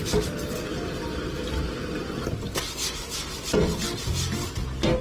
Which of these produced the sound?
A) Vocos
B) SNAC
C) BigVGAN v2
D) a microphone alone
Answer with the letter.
D